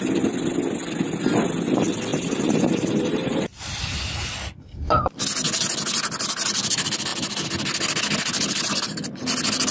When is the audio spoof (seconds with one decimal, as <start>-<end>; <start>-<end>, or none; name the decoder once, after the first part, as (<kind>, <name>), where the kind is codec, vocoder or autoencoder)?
2.1-4.0 (vocoder, BigVGAN v2)